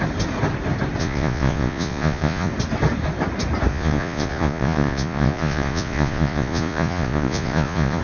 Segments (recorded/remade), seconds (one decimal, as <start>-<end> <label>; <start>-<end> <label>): 0.0-1.0 recorded; 1.0-2.5 remade; 2.5-3.7 recorded; 3.7-8.0 remade